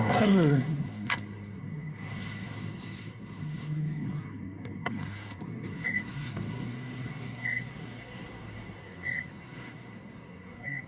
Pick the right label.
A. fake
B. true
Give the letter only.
A